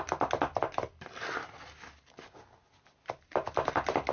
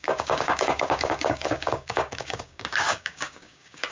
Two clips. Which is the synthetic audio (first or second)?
second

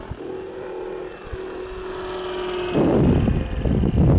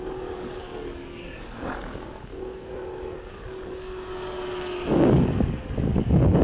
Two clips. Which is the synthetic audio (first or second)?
second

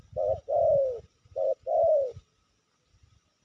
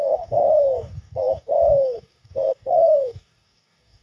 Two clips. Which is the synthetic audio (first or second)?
second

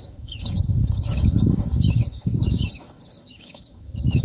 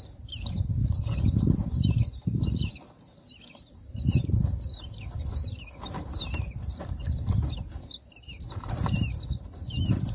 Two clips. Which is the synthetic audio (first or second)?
first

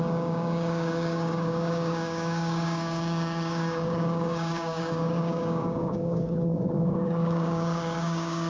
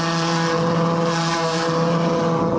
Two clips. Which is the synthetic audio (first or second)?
first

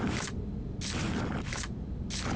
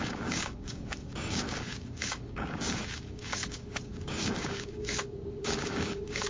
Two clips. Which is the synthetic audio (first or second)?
second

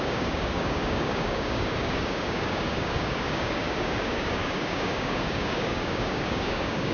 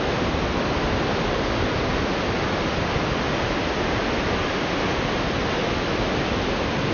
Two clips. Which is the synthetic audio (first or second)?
first